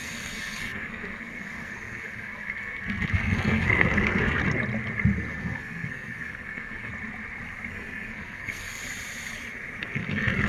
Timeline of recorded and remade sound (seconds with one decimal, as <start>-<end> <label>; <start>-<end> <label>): 0.0-4.4 remade; 4.4-5.3 recorded; 5.3-6.9 remade; 6.9-7.7 recorded; 7.7-8.8 remade; 8.8-9.8 recorded; 9.8-10.5 remade